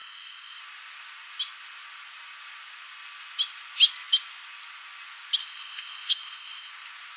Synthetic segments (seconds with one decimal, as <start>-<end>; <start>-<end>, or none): 0.0-0.6; 5.4-6.7